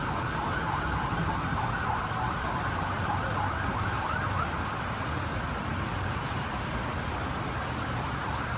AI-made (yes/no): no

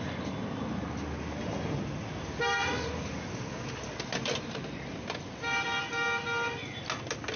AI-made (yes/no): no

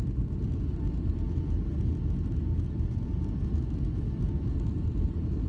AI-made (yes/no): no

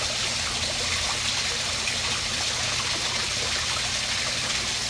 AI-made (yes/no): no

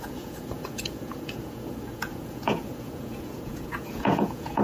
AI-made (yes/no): yes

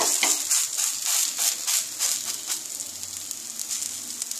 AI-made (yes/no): no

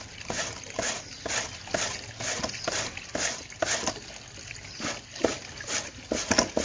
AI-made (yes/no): no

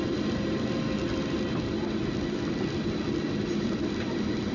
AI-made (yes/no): no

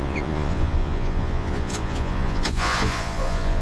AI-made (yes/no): yes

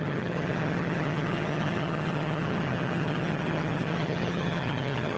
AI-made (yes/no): yes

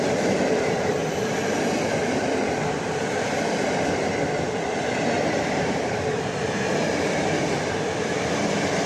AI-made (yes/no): yes